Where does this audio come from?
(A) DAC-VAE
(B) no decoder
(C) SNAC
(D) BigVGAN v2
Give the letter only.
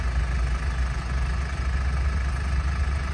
B